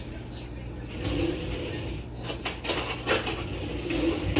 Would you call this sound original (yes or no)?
yes